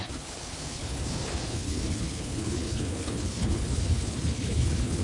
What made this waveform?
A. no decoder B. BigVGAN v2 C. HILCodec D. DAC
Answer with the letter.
C